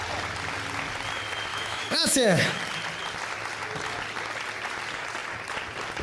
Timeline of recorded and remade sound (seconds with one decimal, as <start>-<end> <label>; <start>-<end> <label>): 0.0-1.5 recorded; 1.5-2.6 remade; 2.6-6.0 recorded